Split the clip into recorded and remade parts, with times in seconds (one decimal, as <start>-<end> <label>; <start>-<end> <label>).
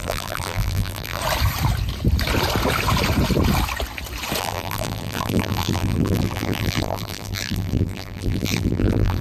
0.0-1.2 remade; 1.2-4.4 recorded; 4.4-9.2 remade